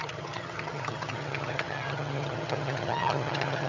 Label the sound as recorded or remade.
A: remade